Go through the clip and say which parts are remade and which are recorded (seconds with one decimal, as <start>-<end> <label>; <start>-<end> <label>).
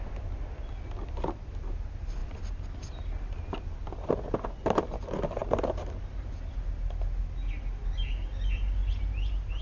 0.0-9.6 recorded